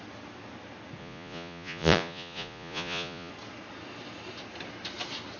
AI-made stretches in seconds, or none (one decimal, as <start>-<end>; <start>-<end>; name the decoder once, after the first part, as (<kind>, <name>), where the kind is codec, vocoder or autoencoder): 1.0-3.3 (vocoder, Vocos)